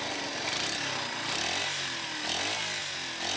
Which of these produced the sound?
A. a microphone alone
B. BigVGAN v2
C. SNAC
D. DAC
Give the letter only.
A